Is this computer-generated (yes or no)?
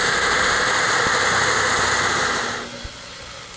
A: no